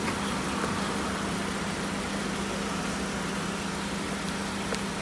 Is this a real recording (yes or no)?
yes